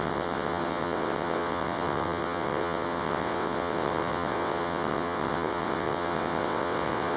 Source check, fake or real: fake